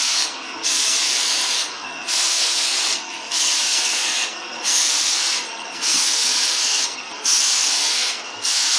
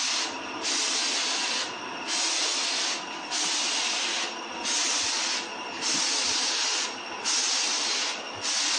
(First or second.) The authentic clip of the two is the second